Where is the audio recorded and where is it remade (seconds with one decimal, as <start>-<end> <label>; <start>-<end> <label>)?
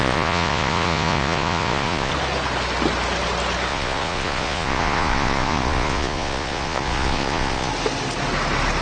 0.0-2.1 remade; 2.1-3.7 recorded; 3.7-7.7 remade; 7.7-8.8 recorded